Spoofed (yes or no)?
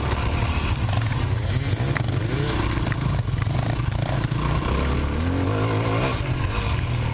no